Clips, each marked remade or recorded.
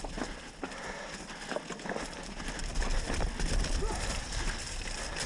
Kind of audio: recorded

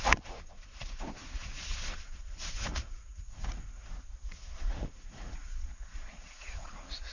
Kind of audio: remade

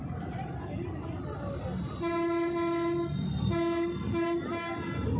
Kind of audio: recorded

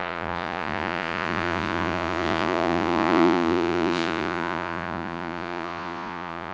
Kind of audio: remade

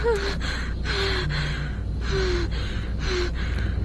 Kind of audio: recorded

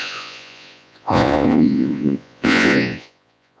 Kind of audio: remade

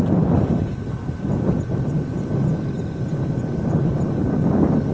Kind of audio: recorded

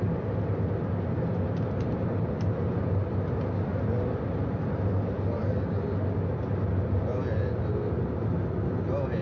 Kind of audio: recorded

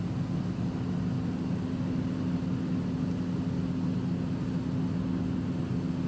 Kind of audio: recorded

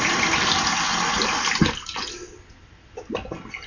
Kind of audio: recorded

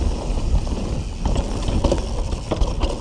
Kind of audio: recorded